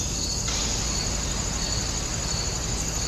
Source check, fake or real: real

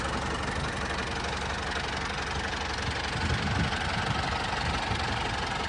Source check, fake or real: real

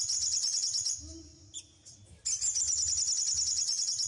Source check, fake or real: real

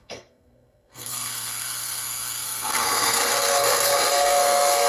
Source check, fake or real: fake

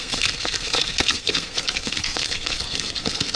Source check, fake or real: fake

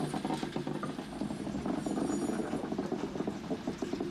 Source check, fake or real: real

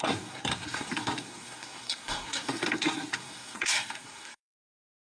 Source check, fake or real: fake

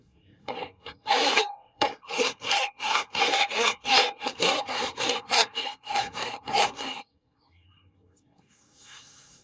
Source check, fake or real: fake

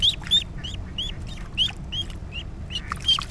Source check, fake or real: real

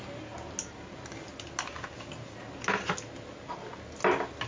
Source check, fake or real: real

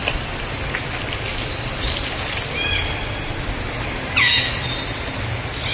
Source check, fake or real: real